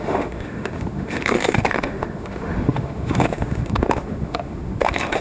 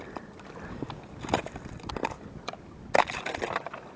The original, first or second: second